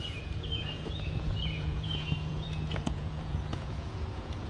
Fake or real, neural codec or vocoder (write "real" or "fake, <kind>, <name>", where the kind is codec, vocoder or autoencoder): fake, vocoder, Vocos